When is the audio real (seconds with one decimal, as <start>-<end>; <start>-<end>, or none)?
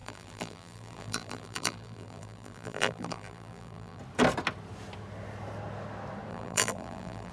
4.0-6.3